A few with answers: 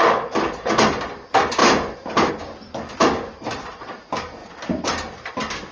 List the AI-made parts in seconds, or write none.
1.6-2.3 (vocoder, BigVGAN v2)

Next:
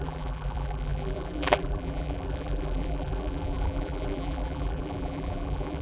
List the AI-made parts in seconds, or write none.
0.0-5.8 (vocoder, BigVGAN v2)

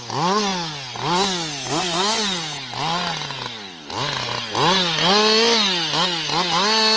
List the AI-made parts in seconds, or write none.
none

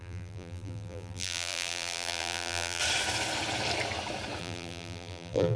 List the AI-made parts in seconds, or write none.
0.0-2.8 (vocoder, BigVGAN v2); 4.4-5.6